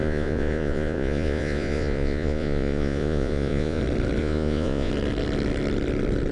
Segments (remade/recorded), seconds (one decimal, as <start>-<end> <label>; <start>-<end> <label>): 0.0-3.8 remade; 3.8-4.2 recorded; 4.2-4.9 remade; 4.9-6.3 recorded